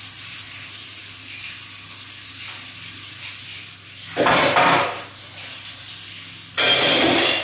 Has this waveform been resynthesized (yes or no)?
no